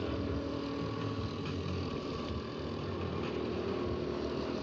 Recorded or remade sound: recorded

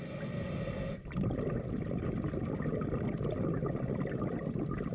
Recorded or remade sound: recorded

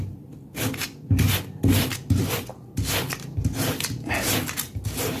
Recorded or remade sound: recorded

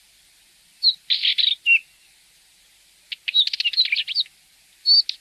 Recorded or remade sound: recorded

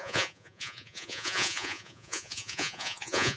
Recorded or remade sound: remade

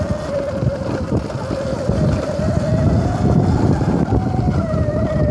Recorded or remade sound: recorded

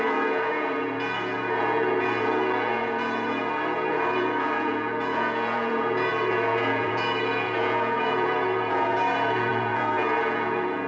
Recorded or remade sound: remade